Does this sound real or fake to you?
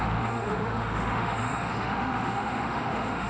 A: fake